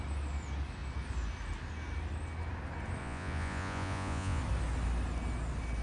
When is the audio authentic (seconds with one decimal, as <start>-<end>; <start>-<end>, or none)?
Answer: 0.0-3.0; 4.4-5.8